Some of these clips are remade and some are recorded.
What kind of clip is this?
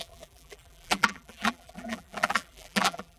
remade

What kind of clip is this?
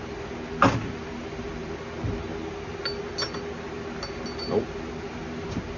recorded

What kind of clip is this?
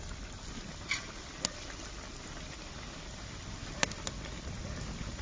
recorded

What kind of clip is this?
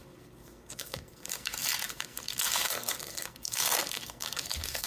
remade